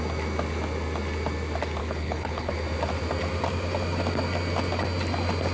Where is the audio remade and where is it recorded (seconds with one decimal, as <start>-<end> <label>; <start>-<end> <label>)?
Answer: 0.0-1.8 recorded; 1.8-2.5 remade; 2.5-5.5 recorded